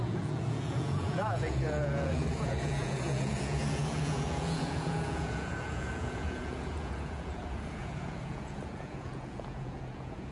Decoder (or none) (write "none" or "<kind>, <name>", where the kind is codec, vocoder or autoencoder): vocoder, Vocos